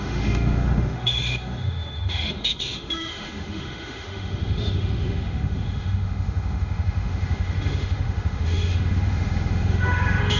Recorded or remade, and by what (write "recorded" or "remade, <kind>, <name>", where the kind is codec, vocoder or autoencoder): remade, autoencoder, DAC-VAE